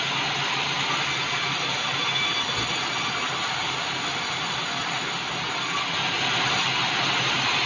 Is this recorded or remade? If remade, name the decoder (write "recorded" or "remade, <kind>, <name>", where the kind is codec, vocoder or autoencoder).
recorded